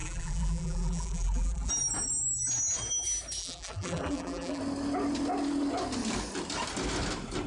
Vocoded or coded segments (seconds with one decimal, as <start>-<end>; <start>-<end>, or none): 0.0-1.7; 3.4-4.6